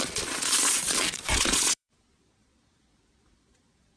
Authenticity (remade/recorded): remade